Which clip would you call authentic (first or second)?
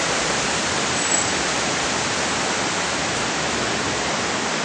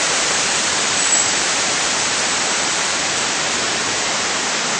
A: first